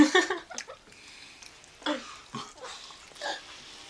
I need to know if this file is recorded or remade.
recorded